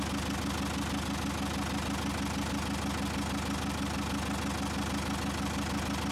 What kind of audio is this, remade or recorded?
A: recorded